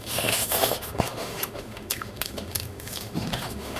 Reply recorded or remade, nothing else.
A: remade